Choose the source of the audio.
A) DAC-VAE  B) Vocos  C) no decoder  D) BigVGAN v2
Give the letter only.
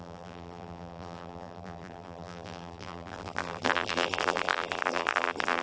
D